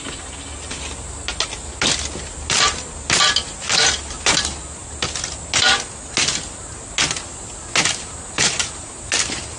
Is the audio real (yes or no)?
yes